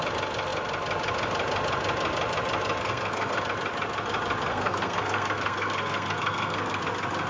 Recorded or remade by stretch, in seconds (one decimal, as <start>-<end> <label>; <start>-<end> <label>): 0.0-2.8 recorded; 2.8-3.4 remade; 3.4-4.5 recorded; 4.5-6.8 remade; 6.8-7.3 recorded

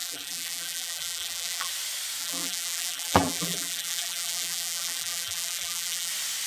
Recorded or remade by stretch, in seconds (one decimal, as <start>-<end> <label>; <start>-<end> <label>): 0.0-1.7 remade; 1.7-2.2 recorded; 2.2-6.1 remade; 6.1-6.5 recorded

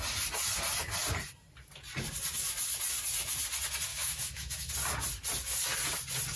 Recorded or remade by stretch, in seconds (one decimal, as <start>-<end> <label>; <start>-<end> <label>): 0.0-3.9 recorded; 3.9-4.7 remade; 4.7-6.4 recorded

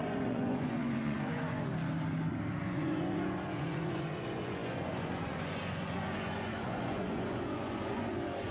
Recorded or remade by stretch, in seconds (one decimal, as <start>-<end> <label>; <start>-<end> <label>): 0.0-1.7 remade; 1.7-2.6 recorded; 2.6-8.5 remade

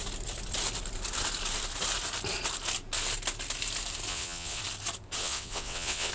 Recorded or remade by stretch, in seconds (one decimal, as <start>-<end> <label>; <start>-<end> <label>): 0.0-4.1 recorded; 4.1-4.6 remade; 4.6-5.2 recorded; 5.2-6.1 remade

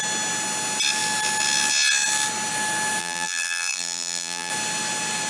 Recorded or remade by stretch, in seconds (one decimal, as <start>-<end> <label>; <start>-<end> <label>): 0.0-3.0 recorded; 3.0-4.5 remade; 4.5-5.3 recorded